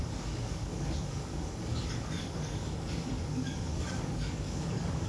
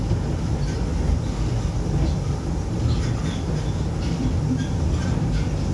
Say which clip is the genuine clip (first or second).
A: second